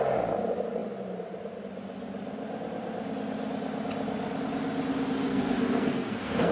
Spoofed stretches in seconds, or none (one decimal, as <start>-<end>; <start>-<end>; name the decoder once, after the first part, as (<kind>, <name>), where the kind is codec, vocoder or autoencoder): 5.3-6.5 (codec, SNAC)